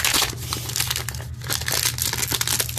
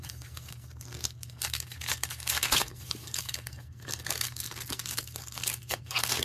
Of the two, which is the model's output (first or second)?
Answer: second